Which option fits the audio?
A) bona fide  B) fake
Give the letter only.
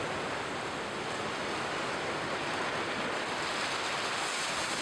A